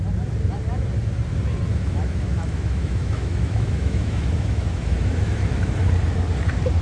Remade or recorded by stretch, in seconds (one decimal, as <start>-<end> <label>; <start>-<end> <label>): 0.0-1.7 recorded; 1.7-5.8 remade; 5.8-6.8 recorded